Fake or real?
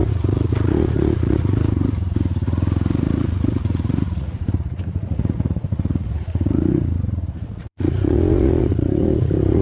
fake